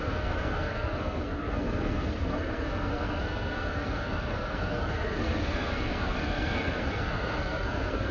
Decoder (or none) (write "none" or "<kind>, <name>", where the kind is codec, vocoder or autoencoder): codec, SNAC